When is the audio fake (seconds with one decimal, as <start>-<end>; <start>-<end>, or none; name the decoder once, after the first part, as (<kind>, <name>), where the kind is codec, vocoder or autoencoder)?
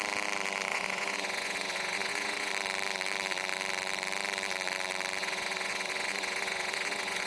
0.7-2.5 (vocoder, Vocos); 5.2-7.3